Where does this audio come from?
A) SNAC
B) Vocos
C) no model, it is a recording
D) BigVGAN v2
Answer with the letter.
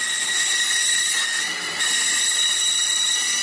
C